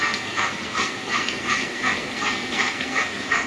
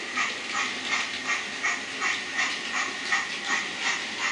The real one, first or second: second